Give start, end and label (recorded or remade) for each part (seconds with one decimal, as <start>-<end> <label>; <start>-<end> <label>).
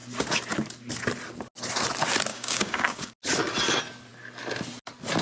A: 0.0-2.3 recorded; 2.3-3.1 remade; 3.1-5.2 recorded